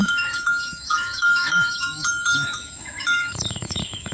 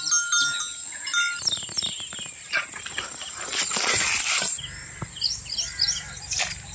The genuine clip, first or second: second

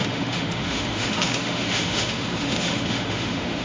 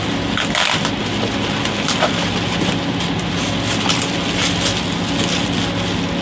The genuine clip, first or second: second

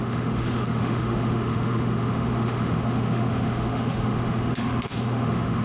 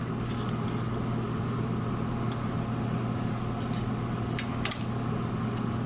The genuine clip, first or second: second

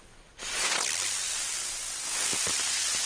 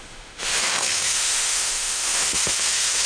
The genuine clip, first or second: first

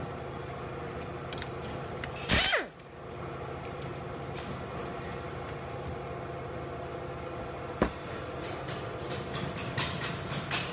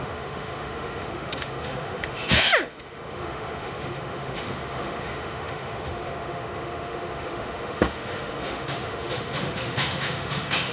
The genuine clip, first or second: first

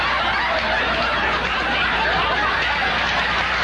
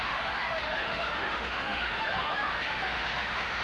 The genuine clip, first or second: first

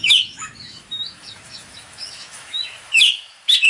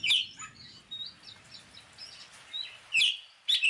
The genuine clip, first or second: second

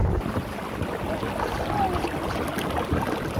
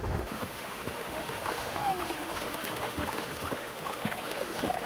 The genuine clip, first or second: first